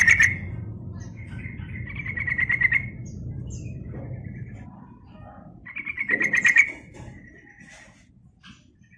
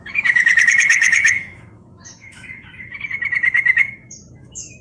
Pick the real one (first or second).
first